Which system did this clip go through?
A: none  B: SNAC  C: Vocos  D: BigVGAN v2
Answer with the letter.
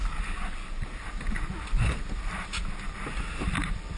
A